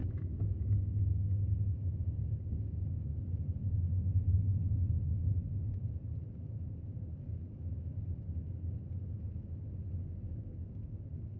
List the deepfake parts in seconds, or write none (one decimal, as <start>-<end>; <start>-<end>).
0.0-3.2